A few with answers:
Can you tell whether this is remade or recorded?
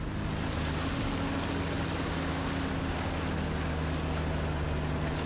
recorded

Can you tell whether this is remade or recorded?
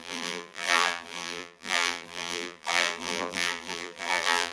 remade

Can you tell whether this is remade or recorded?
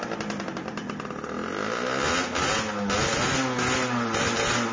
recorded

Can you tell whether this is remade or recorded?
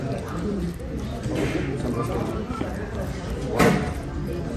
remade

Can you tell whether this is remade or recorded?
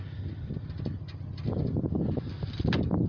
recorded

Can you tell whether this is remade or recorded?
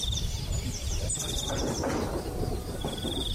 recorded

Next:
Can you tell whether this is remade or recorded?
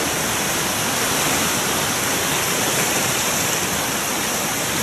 remade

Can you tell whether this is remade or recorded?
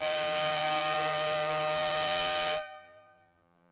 remade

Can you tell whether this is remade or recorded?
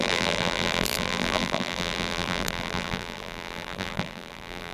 remade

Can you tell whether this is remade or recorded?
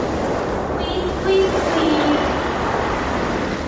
recorded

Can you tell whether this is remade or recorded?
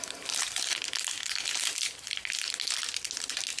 recorded